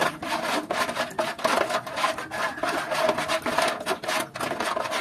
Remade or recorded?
recorded